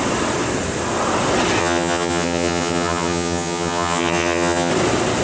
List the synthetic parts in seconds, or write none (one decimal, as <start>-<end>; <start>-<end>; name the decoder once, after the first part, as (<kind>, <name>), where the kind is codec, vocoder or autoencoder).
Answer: 1.6-4.7 (vocoder, HiFi-GAN)